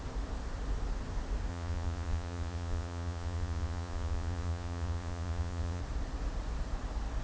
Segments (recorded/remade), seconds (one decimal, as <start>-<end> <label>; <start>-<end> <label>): 0.0-1.5 recorded; 1.5-5.8 remade; 5.8-7.2 recorded